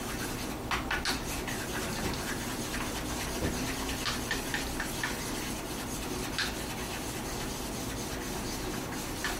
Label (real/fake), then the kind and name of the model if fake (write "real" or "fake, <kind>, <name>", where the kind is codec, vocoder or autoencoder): real